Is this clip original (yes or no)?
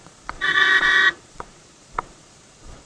no